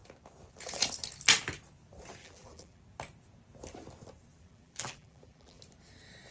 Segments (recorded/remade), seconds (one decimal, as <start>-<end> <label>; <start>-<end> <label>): 0.0-2.2 recorded; 2.2-2.8 remade; 2.8-4.3 recorded; 4.3-5.6 remade; 5.6-6.3 recorded

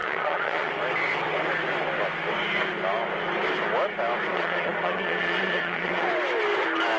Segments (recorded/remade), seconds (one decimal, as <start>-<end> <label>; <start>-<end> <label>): 0.0-0.7 remade; 0.7-4.3 recorded; 4.3-6.1 remade; 6.1-7.0 recorded

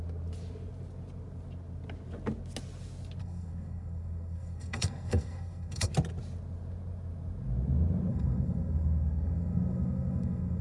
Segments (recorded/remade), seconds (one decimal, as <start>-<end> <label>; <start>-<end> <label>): 0.0-3.2 recorded; 3.2-5.9 remade; 5.9-8.1 recorded; 8.1-10.6 remade

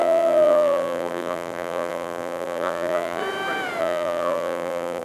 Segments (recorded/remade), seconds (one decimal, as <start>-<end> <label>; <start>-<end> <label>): 0.0-3.2 remade; 3.2-3.8 recorded; 3.8-5.0 remade